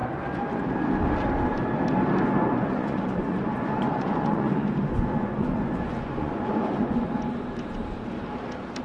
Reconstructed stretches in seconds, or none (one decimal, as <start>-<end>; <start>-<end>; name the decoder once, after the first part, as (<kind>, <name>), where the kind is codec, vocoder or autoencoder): 2.4-7.2 (vocoder, Vocos)